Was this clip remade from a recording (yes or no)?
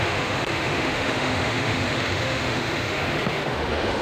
yes